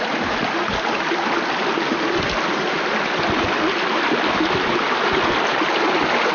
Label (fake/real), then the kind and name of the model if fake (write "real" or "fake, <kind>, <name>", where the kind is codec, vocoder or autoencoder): real